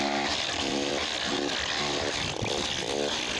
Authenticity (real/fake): real